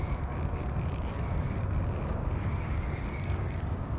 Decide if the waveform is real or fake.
fake